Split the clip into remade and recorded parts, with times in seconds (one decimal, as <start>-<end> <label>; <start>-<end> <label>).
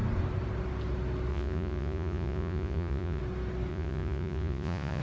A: 0.0-1.3 recorded; 1.3-3.2 remade; 3.2-3.7 recorded; 3.7-5.0 remade